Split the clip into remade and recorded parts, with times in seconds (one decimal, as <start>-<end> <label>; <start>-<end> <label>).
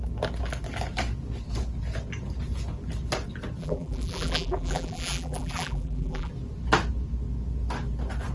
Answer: 0.0-3.6 recorded; 3.6-6.3 remade; 6.3-8.3 recorded